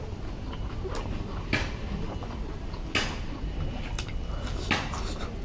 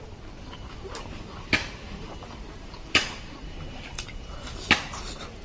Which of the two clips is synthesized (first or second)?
second